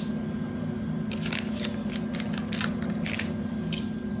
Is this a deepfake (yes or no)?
no